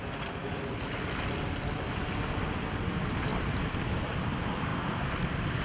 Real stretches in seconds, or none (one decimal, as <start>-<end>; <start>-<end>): 0.0-3.3; 4.2-5.6